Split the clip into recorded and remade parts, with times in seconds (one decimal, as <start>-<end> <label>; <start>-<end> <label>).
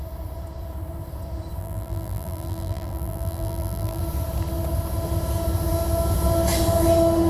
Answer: 0.0-1.6 recorded; 1.6-4.0 remade; 4.0-7.3 recorded